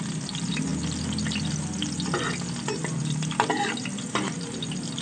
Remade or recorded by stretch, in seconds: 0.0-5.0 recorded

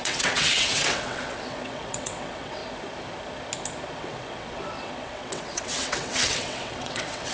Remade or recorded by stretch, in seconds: 0.0-2.6 remade; 2.6-3.9 recorded; 3.9-7.3 remade

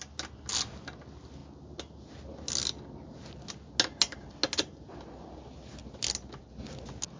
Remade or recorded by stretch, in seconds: 0.0-7.2 recorded

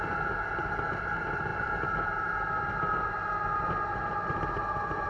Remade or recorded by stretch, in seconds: 0.0-5.1 recorded

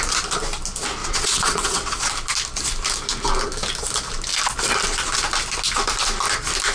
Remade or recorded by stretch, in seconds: 0.0-1.0 recorded; 1.0-2.0 remade; 2.0-6.7 recorded